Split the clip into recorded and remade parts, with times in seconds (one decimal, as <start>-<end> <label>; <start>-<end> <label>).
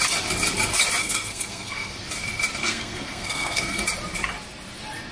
0.0-1.0 recorded; 1.0-2.0 remade; 2.0-2.6 recorded; 2.6-3.8 remade; 3.8-5.1 recorded